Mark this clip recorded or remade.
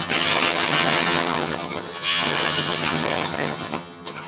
remade